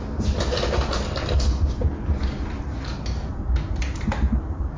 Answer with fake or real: real